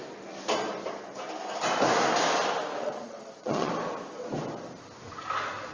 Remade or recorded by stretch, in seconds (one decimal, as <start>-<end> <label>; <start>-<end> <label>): 0.0-2.7 recorded; 2.7-3.7 remade; 3.7-5.7 recorded